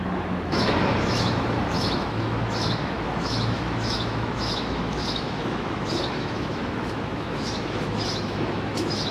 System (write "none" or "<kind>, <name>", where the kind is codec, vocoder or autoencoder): autoencoder, DAC-VAE